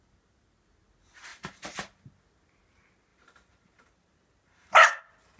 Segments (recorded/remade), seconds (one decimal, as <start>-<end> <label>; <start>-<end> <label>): 0.0-1.3 recorded; 1.3-2.0 remade; 2.0-3.1 recorded; 3.1-5.0 remade; 5.0-5.4 recorded